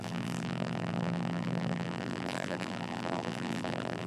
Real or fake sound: fake